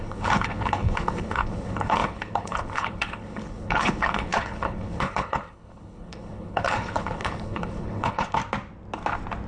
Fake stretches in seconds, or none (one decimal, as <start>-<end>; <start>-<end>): 0.0-8.4